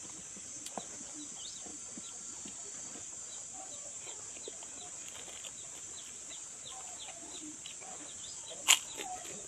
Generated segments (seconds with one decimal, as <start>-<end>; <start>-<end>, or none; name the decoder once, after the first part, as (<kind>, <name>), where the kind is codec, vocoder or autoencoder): 1.7-5.9 (vocoder, BigVGAN v2); 7.9-9.5